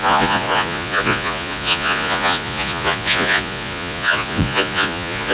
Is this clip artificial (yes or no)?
yes